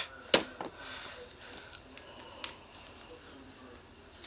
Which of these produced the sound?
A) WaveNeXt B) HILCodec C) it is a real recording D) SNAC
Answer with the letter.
C